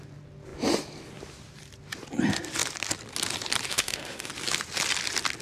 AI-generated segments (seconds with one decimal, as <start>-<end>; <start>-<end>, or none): 3.7-4.3